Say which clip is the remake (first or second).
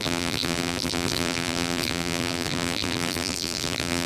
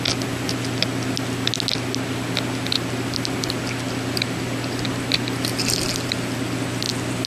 first